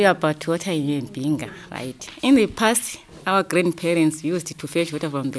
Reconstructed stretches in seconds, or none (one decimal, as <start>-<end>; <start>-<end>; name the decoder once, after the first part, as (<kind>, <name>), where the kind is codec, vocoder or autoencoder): none